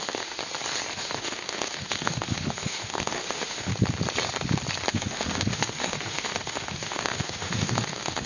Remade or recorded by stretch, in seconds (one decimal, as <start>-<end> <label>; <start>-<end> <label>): 0.0-0.4 remade; 0.4-0.9 recorded; 0.9-3.7 remade; 3.7-4.9 recorded; 4.9-8.3 remade